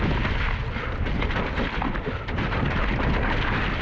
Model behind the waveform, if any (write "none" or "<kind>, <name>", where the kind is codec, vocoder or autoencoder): none